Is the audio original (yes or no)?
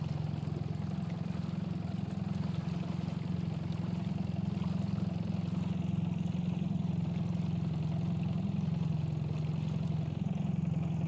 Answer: yes